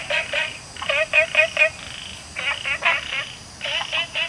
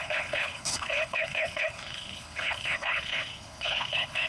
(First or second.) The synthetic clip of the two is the second